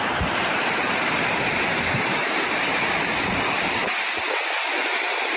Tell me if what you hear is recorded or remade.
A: remade